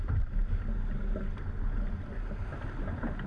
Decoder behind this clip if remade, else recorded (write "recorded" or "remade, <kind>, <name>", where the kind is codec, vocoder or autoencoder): recorded